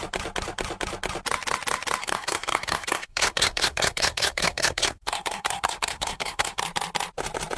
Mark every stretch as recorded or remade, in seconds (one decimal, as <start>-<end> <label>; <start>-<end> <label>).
0.0-2.0 recorded; 2.0-6.6 remade; 6.6-7.6 recorded